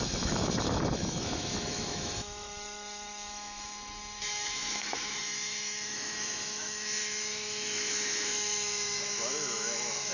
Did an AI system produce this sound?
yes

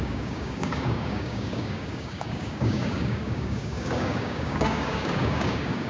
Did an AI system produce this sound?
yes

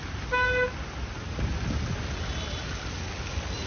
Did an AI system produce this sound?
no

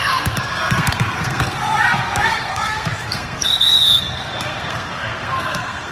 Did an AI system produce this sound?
yes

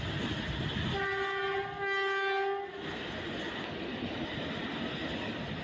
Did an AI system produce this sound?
no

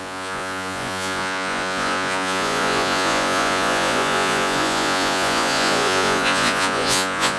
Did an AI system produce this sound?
yes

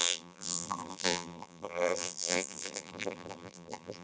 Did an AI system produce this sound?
yes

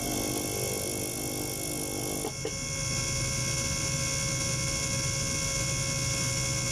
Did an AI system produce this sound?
no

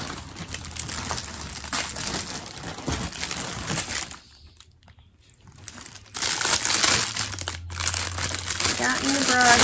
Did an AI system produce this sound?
no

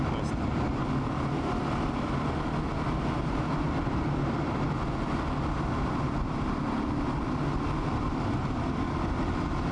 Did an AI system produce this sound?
no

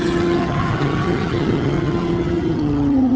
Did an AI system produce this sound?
yes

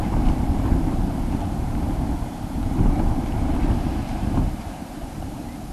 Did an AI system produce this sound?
yes